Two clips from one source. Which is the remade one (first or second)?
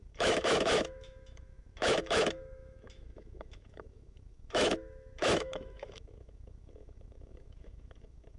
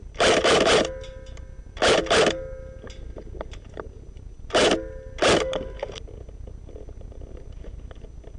first